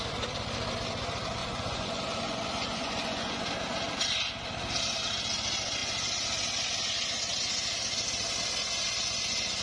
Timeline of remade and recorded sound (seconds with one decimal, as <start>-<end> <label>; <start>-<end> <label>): 0.0-1.4 recorded; 1.4-3.4 remade; 3.4-9.6 recorded